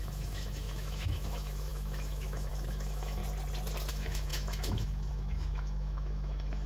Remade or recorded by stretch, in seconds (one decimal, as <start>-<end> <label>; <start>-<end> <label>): 0.0-3.2 remade; 3.2-3.9 recorded; 3.9-6.7 remade

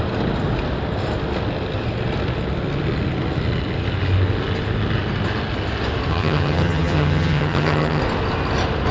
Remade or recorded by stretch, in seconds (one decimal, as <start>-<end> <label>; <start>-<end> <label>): 0.0-6.1 recorded; 6.1-8.0 remade; 8.0-8.9 recorded

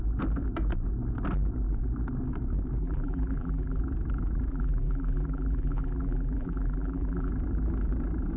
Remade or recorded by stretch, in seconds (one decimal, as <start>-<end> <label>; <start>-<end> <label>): 0.0-2.8 recorded; 2.8-3.8 remade; 3.8-4.5 recorded; 4.5-7.3 remade; 7.3-8.4 recorded

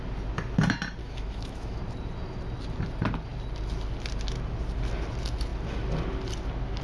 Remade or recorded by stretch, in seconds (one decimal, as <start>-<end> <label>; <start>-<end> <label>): 0.0-1.0 recorded; 1.0-1.8 remade; 1.8-6.8 recorded